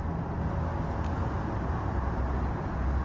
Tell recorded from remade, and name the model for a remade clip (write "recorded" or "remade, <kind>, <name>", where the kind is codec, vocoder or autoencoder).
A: recorded